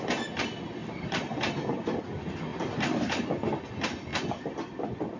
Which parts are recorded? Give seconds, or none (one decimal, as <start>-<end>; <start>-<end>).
0.0-0.8; 2.0-2.5; 3.3-5.2